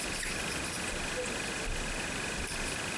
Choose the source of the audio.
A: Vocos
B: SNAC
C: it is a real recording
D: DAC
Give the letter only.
C